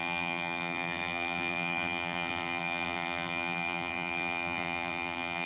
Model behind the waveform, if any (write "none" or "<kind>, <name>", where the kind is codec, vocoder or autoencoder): vocoder, BigVGAN v2